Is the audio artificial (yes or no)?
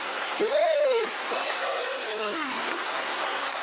yes